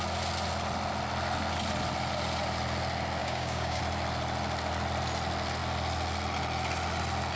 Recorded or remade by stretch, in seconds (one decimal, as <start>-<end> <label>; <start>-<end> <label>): 0.0-3.2 recorded; 3.2-3.8 remade; 3.8-7.4 recorded